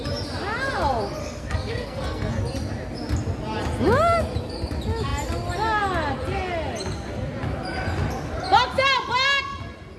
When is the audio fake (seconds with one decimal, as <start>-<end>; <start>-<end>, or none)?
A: 1.2-2.4